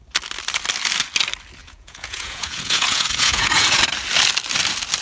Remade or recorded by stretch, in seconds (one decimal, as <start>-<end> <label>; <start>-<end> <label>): 0.0-1.6 recorded; 1.6-3.8 remade; 3.8-5.0 recorded